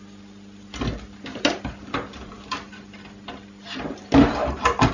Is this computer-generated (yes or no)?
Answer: no